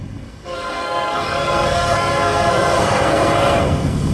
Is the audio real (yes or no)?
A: no